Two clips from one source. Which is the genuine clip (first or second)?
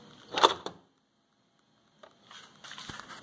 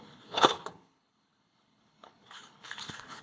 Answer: first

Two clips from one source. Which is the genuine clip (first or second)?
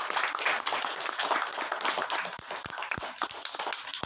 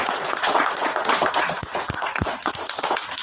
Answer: first